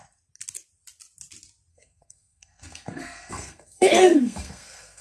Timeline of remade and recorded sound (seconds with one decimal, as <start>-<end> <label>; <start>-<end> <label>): 0.0-1.7 recorded; 1.7-5.0 remade

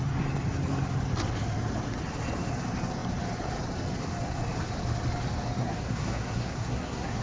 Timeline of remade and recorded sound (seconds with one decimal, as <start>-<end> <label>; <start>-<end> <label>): 0.0-5.6 recorded; 5.6-7.2 remade